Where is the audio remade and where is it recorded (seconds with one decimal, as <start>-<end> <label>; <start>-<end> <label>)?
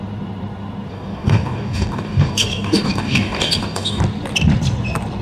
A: 0.0-0.9 recorded; 0.9-4.0 remade; 4.0-5.2 recorded